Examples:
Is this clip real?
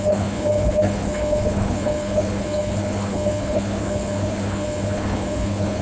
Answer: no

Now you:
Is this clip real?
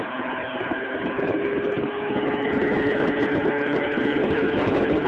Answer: no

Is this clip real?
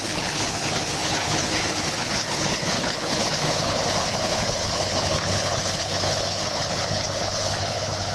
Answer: no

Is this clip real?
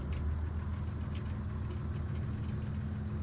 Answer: yes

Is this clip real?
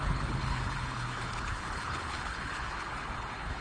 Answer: no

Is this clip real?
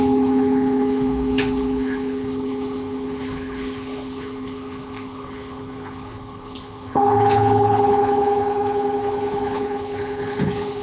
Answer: no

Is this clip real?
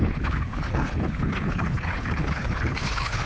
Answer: no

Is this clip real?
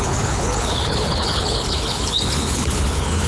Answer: no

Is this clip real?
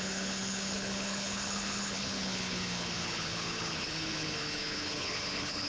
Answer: no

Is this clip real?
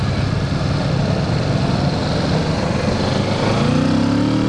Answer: yes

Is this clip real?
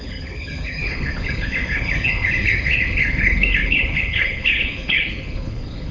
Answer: no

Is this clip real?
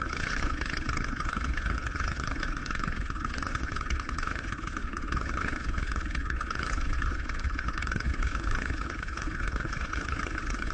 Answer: no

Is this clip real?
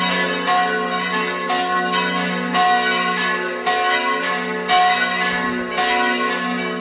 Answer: yes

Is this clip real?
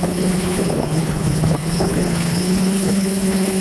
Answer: no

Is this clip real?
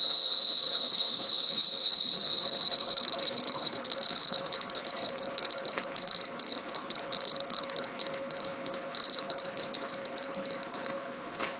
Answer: no